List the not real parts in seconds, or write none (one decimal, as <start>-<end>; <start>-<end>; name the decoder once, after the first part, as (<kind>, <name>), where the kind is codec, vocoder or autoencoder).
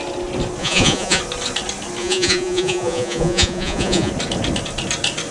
0.6-1.2 (vocoder, Vocos); 2.0-4.1